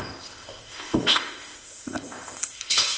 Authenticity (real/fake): fake